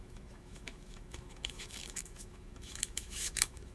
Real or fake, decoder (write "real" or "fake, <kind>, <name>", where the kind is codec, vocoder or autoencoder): fake, autoencoder, DAC-VAE